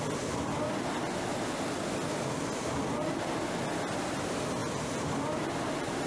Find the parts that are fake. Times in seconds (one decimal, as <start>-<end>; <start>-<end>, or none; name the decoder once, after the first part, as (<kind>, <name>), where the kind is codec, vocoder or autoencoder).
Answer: 4.6-6.1 (vocoder, BigVGAN v2)